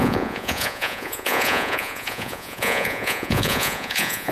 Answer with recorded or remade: remade